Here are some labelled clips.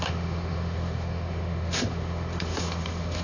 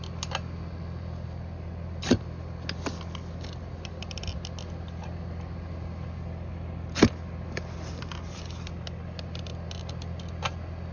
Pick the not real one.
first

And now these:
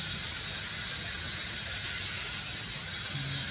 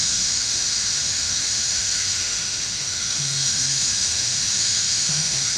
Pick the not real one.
second